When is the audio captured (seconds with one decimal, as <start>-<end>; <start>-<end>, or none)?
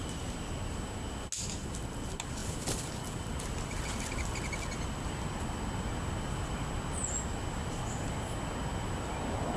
0.0-9.6